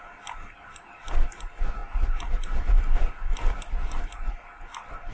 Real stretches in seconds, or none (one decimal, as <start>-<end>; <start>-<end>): 0.0-5.1